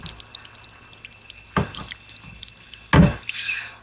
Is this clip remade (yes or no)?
no